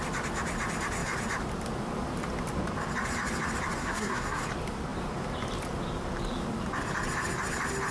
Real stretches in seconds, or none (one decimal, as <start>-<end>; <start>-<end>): 0.0-3.8; 4.4-7.9